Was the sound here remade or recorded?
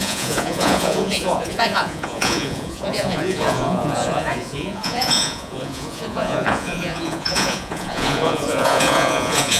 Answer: remade